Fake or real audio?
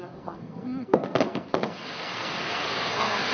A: fake